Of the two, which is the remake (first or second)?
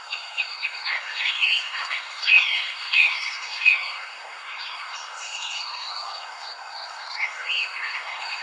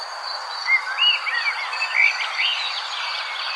first